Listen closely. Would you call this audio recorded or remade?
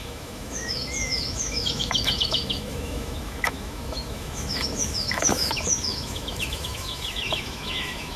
remade